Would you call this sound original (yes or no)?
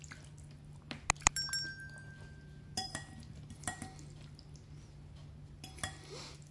yes